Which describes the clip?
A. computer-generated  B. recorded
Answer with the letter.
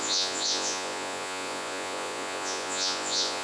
A